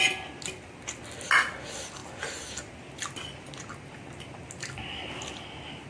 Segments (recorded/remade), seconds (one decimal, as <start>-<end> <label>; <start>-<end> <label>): 0.0-5.9 recorded